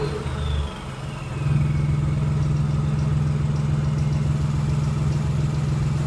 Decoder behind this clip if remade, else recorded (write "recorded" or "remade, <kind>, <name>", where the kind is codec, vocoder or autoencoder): recorded